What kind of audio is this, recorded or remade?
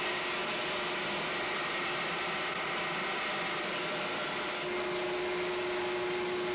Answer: recorded